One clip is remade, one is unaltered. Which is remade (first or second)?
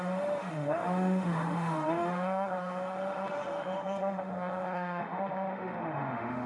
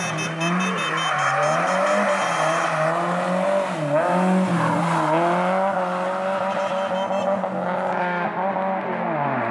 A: first